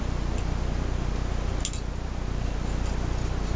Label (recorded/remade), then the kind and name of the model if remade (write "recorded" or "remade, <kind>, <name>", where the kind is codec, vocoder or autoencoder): recorded